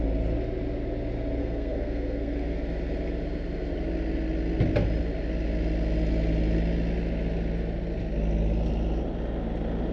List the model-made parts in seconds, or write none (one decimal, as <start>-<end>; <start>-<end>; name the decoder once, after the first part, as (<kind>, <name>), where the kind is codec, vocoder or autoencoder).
1.4-2.6 (codec, SNAC)